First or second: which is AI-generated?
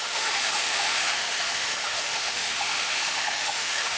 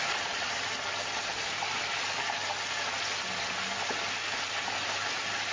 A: first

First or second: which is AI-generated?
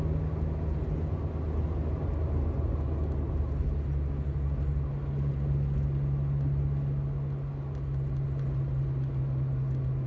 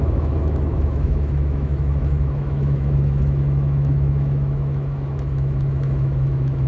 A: second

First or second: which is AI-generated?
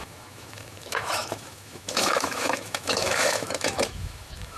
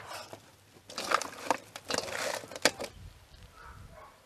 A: first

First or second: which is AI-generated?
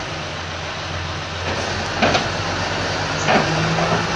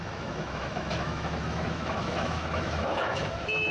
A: second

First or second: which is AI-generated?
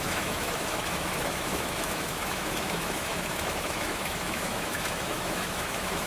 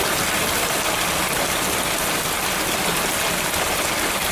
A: first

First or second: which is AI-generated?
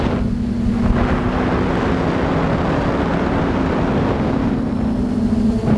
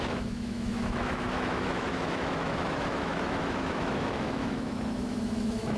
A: second